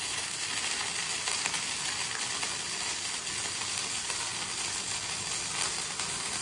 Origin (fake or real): real